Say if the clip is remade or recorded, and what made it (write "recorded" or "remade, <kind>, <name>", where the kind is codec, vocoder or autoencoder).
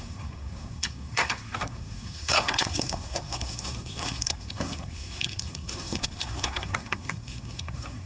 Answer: remade, codec, SNAC